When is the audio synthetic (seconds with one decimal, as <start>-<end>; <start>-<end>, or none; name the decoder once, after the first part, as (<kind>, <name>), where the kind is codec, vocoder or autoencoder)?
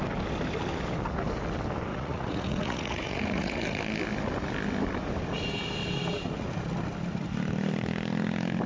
1.9-3.8 (vocoder, Vocos)